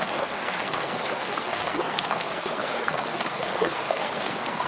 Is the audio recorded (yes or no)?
no